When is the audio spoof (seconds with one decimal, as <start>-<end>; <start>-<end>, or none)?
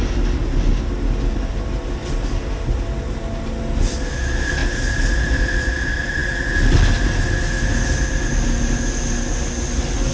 none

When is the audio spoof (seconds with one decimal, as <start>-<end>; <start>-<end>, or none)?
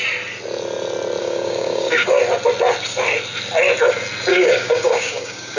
1.2-2.2; 4.3-5.6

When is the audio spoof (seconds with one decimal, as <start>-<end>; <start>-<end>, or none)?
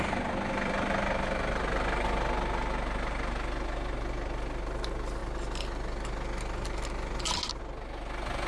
none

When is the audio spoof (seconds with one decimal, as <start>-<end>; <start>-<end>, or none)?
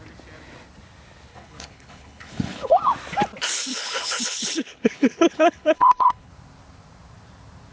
1.3-2.8; 3.7-6.3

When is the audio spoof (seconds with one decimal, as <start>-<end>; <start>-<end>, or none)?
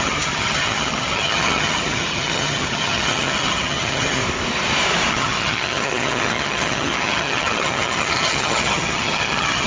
0.0-4.2; 5.1-9.7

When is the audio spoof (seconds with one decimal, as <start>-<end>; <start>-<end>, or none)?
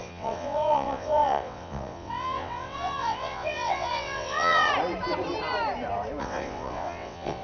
0.0-4.7; 6.2-7.4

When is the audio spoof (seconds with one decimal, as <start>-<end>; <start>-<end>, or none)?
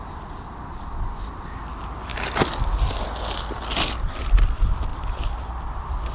4.9-5.5